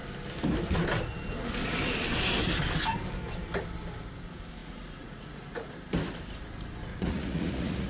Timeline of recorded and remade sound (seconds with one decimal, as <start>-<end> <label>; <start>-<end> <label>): 0.0-4.6 recorded; 4.6-5.7 remade; 5.7-6.9 recorded; 6.9-7.9 remade